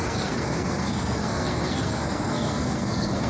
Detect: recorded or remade remade